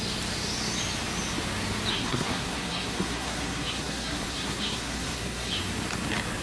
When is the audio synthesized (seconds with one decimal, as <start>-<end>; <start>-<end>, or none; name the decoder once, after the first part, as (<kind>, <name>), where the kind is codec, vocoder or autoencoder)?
1.9-5.6 (codec, SNAC)